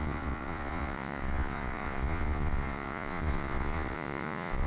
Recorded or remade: remade